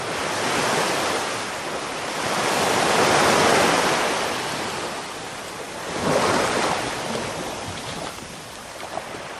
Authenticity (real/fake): real